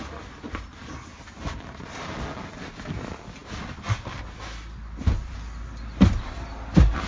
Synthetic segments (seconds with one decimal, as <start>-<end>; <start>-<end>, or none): 1.1-2.1